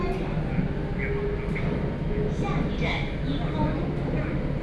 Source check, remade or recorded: recorded